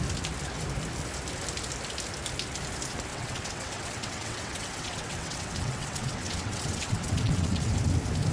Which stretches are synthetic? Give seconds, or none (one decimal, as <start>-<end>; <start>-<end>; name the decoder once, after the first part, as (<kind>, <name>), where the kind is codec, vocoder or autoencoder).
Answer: 3.1-7.7 (vocoder, WaveNeXt)